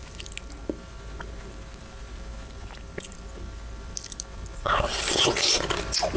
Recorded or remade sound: recorded